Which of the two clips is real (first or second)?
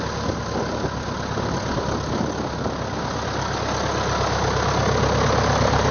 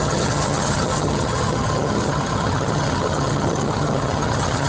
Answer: first